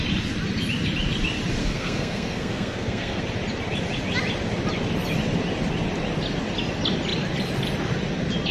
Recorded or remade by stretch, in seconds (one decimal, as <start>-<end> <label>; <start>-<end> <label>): 0.0-1.6 recorded; 1.6-3.2 remade; 3.2-8.5 recorded